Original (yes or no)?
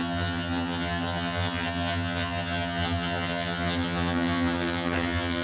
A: no